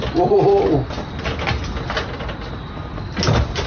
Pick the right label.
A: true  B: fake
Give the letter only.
A